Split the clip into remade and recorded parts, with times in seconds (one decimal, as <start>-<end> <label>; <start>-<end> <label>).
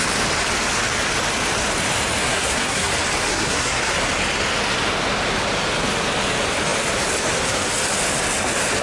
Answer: 0.0-2.2 recorded; 2.2-2.9 remade; 2.9-3.3 recorded; 3.3-3.9 remade; 3.9-8.8 recorded